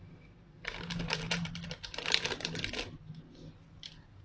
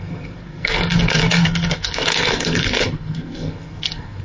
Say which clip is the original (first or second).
first